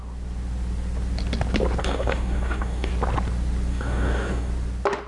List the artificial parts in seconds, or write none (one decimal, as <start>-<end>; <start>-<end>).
1.8-2.9; 3.7-4.5